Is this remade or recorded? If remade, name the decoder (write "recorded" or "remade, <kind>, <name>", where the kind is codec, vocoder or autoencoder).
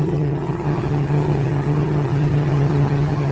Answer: remade, vocoder, HiFi-GAN